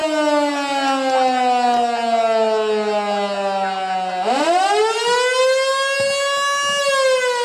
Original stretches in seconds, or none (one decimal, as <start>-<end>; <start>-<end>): 0.0-7.4